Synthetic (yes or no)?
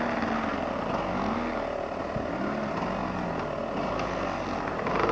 no